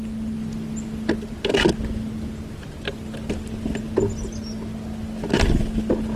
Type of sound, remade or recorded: recorded